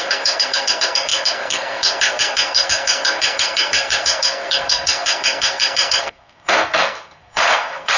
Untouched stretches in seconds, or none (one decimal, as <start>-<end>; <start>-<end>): none